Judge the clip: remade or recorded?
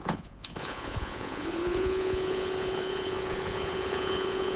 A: remade